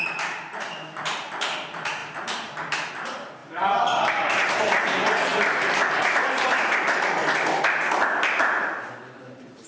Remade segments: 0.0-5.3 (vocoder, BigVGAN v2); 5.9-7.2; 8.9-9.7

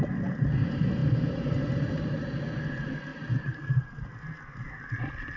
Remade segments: 1.0-2.3 (vocoder, BigVGAN v2); 3.1-4.1

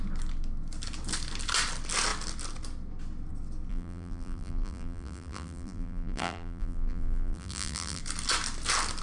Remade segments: 3.7-8.0 (vocoder, BigVGAN v2)

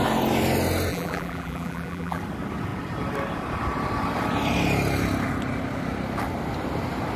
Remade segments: 0.9-2.2 (vocoder, BigVGAN v2)

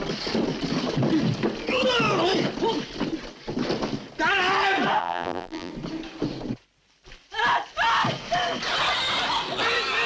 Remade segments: 5.0-5.7 (vocoder, BigVGAN v2)

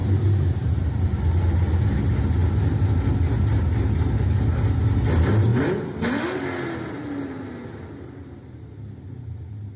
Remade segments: 0.0-1.2 (vocoder, BigVGAN v2)

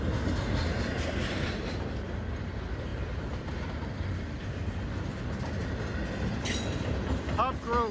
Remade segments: 2.9-4.2 (vocoder, BigVGAN v2)